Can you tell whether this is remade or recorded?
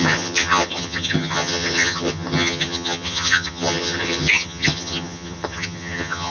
remade